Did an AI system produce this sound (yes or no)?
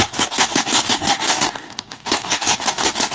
yes